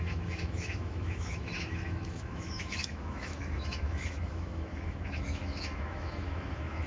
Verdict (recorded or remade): remade